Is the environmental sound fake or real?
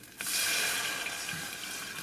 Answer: real